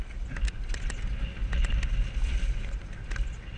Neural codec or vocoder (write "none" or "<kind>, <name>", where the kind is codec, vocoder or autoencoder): none